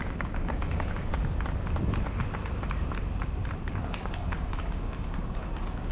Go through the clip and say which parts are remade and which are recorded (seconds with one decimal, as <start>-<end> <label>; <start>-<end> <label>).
0.0-1.1 remade; 1.1-3.6 recorded; 3.6-5.9 remade